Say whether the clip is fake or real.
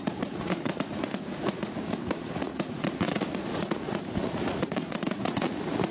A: fake